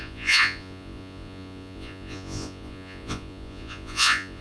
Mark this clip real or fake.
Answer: fake